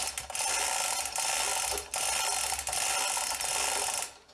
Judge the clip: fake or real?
real